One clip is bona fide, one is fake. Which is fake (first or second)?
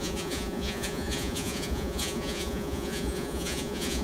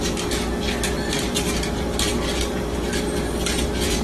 first